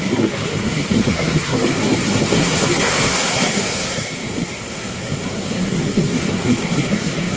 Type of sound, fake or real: fake